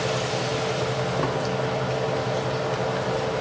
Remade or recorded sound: recorded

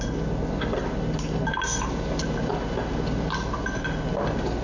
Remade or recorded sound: recorded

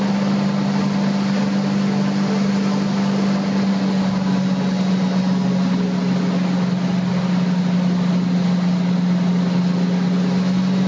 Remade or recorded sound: recorded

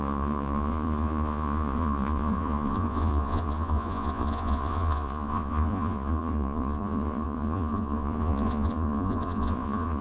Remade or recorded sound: remade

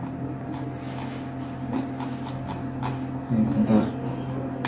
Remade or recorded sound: recorded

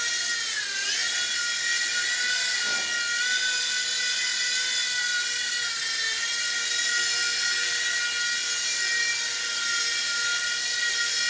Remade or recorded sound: recorded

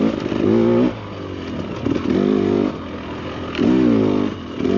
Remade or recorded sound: recorded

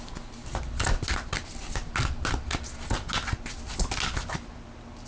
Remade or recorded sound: recorded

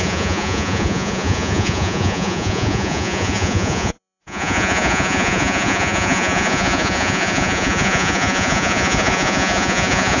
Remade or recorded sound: remade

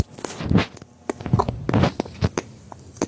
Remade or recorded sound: recorded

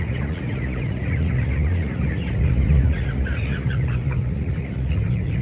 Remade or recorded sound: remade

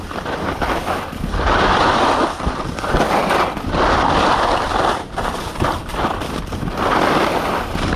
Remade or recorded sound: recorded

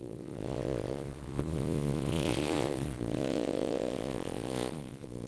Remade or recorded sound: remade